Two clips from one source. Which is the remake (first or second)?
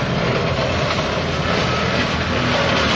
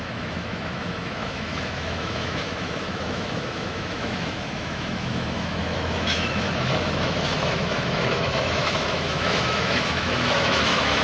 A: second